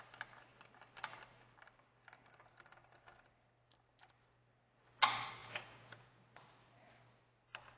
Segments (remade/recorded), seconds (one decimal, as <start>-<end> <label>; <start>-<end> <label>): 0.0-5.4 recorded; 5.4-6.2 remade; 6.2-7.8 recorded